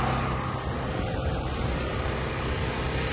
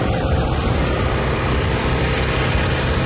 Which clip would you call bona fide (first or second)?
first